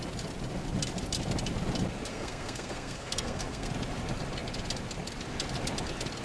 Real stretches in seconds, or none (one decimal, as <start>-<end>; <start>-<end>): 0.0-2.1; 3.7-6.2